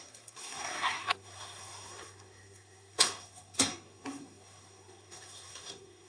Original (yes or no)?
no